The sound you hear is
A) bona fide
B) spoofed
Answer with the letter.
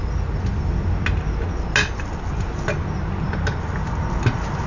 A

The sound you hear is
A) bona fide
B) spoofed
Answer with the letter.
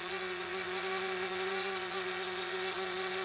B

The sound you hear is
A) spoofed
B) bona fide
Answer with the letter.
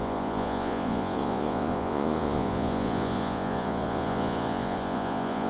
A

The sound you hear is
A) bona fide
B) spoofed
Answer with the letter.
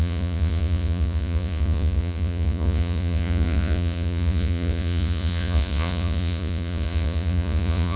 B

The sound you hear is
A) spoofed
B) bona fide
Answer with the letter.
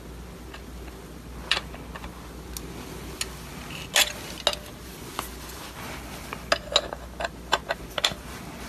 B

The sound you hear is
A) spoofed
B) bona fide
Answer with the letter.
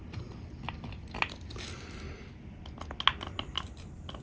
B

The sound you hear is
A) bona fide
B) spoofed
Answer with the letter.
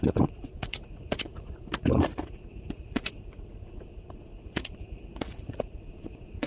B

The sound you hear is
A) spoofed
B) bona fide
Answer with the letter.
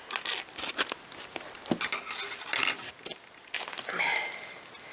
B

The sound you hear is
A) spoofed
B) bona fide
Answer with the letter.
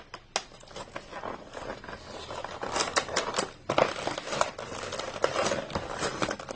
B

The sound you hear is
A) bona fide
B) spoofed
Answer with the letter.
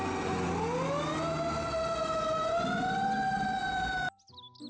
A